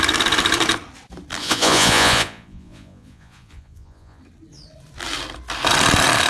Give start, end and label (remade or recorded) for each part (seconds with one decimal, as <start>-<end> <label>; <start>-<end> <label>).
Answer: 0.0-1.4 recorded; 1.4-4.2 remade; 4.2-6.3 recorded